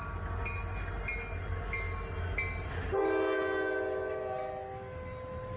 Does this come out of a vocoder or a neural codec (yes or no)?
no